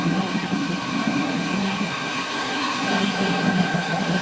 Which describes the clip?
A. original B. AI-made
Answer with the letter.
B